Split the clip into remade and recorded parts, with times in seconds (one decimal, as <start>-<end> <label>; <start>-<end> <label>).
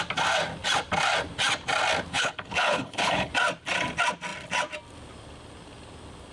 0.0-2.1 recorded; 2.1-3.3 remade; 3.3-6.3 recorded